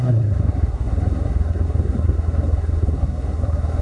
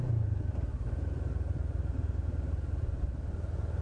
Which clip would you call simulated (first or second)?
first